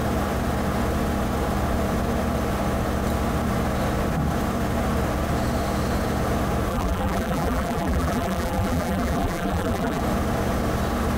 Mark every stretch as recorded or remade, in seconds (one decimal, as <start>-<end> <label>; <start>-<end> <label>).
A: 0.0-6.7 recorded; 6.7-10.0 remade; 10.0-11.2 recorded

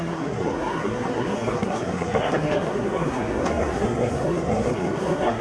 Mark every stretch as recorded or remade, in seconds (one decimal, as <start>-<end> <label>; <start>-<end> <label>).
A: 0.0-5.4 remade

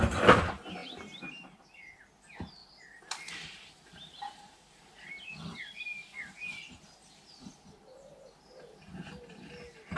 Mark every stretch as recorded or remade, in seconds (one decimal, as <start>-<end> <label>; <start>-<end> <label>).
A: 0.0-10.0 recorded

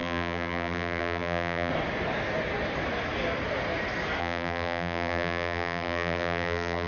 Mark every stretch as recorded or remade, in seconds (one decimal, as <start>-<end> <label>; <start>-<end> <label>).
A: 0.0-1.7 remade; 1.7-4.2 recorded; 4.2-6.9 remade

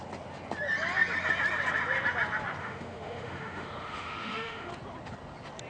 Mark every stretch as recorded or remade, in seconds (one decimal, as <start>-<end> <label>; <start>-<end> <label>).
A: 0.0-2.6 recorded; 2.6-4.7 remade; 4.7-5.7 recorded